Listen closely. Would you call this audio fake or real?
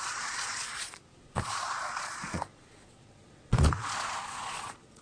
fake